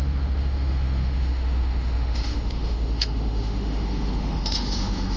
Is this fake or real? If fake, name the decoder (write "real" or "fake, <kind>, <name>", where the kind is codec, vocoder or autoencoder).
fake, autoencoder, DAC-VAE